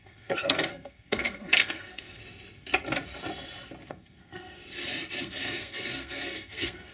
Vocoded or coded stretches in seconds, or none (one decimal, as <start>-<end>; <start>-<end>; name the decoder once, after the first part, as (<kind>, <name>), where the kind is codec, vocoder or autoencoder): 0.0-2.2 (codec, SNAC); 3.9-4.6; 5.2-6.9